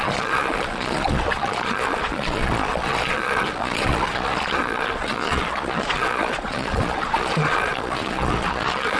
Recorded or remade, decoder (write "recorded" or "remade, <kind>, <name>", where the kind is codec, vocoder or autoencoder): remade, vocoder, Vocos